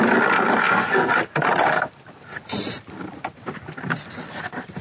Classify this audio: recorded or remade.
remade